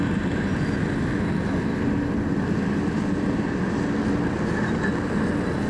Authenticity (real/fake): real